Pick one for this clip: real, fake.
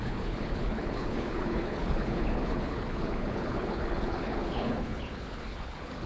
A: fake